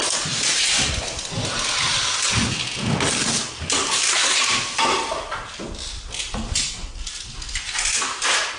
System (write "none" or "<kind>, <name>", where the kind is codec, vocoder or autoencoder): none